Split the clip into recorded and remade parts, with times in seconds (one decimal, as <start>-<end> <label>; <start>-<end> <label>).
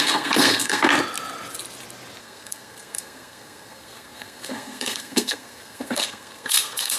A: 0.0-0.9 remade; 0.9-2.2 recorded; 2.2-7.0 remade